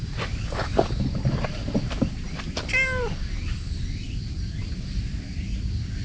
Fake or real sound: real